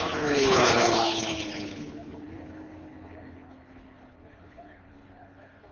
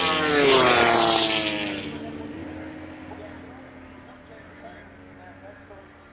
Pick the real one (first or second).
second